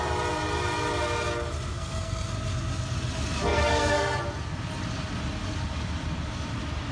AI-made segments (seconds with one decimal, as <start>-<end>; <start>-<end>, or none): 1.7-2.3; 3.5-4.2